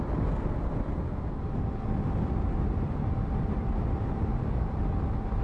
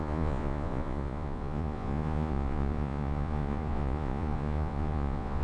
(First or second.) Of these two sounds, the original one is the first